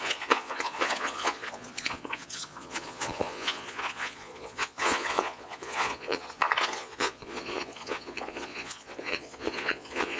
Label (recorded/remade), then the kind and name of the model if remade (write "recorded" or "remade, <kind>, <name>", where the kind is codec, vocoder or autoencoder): remade, vocoder, Vocos